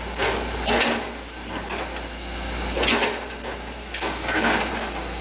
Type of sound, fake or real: real